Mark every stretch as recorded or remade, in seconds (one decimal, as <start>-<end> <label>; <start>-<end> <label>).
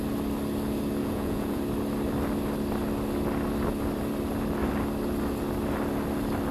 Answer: 0.0-1.0 recorded; 1.0-1.6 remade; 1.6-6.5 recorded